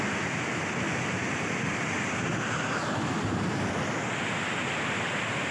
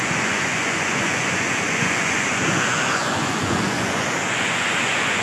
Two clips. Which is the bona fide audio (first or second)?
first